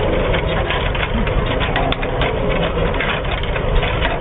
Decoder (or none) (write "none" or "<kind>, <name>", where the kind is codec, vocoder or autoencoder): none